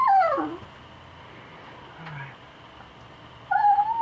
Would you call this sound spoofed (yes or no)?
no